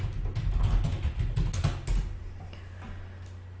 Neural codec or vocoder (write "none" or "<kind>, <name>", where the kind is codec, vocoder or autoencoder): none